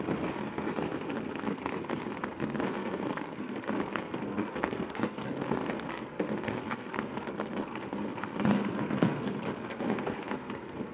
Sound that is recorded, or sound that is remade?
remade